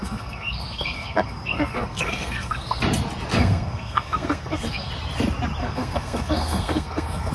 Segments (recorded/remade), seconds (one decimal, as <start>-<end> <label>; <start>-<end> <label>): 0.0-2.8 remade; 2.8-3.3 recorded; 3.3-4.9 remade; 4.9-5.6 recorded; 5.6-7.3 remade